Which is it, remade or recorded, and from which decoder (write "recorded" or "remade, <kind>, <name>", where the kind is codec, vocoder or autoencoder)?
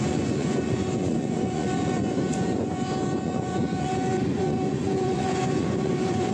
remade, vocoder, Vocos